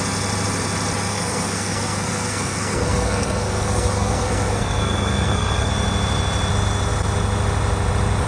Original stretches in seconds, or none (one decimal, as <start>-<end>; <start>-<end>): 0.0-1.1; 5.7-8.3